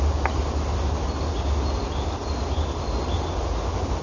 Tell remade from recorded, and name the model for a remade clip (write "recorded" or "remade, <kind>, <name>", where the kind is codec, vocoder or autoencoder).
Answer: recorded